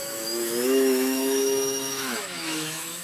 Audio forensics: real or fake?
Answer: fake